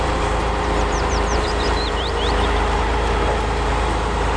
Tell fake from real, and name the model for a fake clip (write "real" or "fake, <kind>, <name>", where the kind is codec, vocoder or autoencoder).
fake, vocoder, BigVGAN v2